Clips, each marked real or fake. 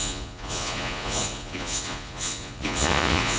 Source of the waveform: fake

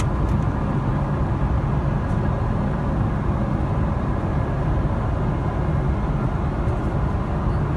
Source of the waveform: real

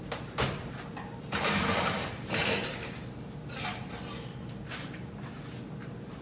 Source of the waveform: real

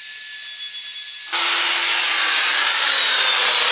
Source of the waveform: real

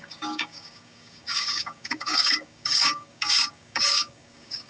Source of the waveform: fake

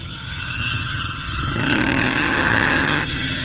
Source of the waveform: fake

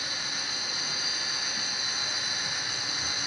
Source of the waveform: real